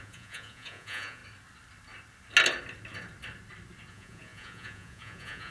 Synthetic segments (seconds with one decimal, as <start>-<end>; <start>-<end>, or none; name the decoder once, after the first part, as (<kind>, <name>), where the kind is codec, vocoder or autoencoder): 0.0-1.2 (vocoder, Vocos); 3.9-5.5